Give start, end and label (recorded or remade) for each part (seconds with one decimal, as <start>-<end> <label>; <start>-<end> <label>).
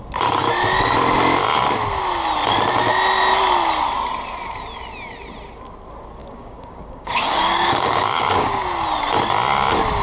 0.0-6.2 recorded; 6.2-8.6 remade; 8.6-10.0 recorded